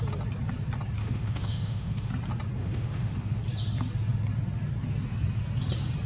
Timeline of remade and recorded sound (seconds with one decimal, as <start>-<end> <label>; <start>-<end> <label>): 0.0-1.0 recorded; 1.0-2.1 remade; 2.1-2.6 recorded; 2.6-3.4 remade; 3.4-6.1 recorded